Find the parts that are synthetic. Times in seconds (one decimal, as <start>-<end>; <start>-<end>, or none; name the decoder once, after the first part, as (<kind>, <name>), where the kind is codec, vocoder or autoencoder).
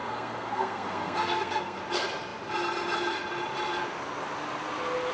0.0-1.8 (codec, SNAC)